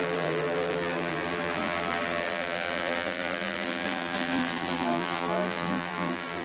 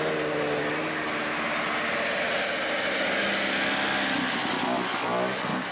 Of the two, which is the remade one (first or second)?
first